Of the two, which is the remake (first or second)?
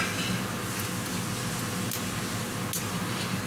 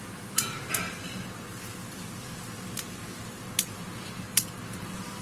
second